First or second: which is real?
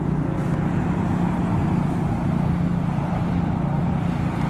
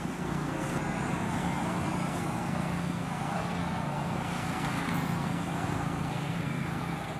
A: first